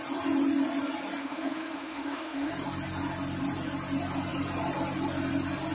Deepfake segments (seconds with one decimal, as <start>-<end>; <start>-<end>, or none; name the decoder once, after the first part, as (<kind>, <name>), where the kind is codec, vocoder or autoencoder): 1.2-2.5 (autoencoder, DAC-VAE)

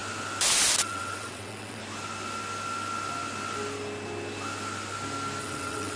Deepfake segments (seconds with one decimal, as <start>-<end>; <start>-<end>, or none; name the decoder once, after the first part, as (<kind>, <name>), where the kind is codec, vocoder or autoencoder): 0.8-1.8 (vocoder, WaveNeXt); 5.4-6.0

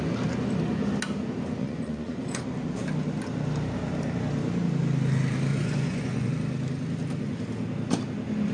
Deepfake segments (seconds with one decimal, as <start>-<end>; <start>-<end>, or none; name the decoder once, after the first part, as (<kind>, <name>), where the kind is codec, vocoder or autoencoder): 1.6-2.4 (vocoder, Vocos); 5.5-6.3